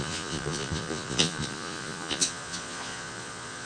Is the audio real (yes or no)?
no